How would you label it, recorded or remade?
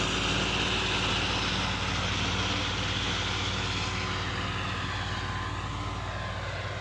recorded